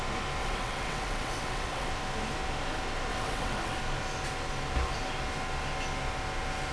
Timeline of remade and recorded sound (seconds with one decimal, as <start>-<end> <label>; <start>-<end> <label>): 0.0-0.4 recorded; 0.4-1.9 remade; 1.9-3.1 recorded; 3.1-3.8 remade; 3.8-6.7 recorded